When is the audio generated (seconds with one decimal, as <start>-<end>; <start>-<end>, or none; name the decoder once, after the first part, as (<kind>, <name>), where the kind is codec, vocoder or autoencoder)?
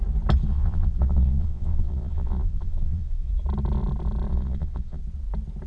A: 0.5-3.3 (vocoder, Vocos); 4.3-5.0